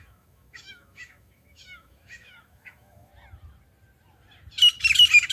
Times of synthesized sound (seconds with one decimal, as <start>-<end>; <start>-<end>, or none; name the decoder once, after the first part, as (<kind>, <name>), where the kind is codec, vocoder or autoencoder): 0.0-3.1 (autoencoder, DAC-VAE)